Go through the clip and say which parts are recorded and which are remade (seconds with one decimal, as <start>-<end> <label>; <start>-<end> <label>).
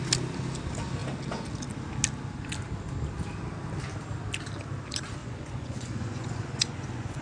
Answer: 0.0-5.2 recorded; 5.2-7.2 remade